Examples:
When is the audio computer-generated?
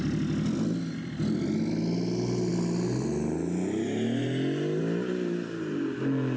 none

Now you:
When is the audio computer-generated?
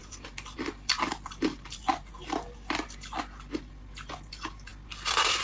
none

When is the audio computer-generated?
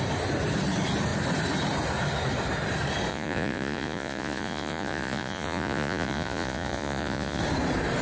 3.1-7.4 (vocoder, Vocos)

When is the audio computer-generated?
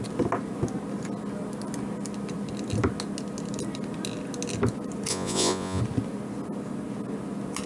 5.1-5.8 (vocoder, Vocos)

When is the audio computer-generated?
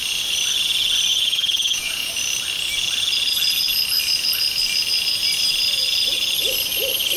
1.1-2.1 (vocoder, Vocos)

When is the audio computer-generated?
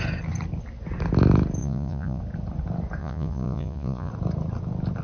1.6-2.2 (vocoder, Vocos); 3.0-4.1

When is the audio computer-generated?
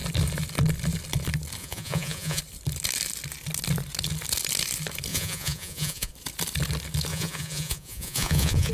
1.6-2.4 (vocoder, Vocos); 5.1-6.1; 7.1-8.7